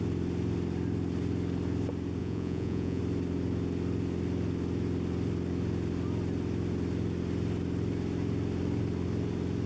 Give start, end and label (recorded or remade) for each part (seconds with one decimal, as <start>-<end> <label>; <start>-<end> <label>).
0.0-2.2 recorded; 2.2-3.0 remade; 3.0-9.7 recorded